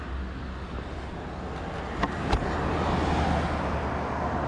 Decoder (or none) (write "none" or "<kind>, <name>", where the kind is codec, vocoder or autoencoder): none